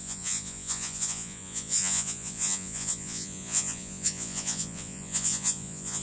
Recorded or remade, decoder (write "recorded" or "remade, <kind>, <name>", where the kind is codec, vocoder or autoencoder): remade, vocoder, Vocos